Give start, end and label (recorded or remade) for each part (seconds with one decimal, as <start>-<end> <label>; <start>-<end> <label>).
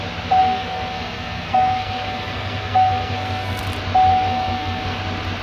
0.0-0.4 recorded; 0.4-3.6 remade; 3.6-4.1 recorded; 4.1-5.0 remade; 5.0-5.4 recorded